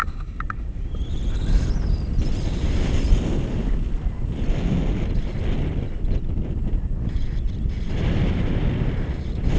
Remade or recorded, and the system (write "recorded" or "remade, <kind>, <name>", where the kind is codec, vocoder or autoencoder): recorded